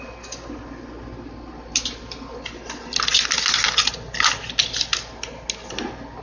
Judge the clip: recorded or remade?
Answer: recorded